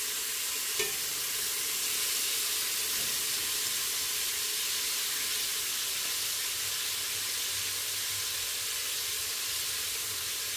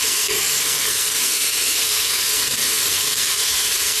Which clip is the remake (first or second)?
second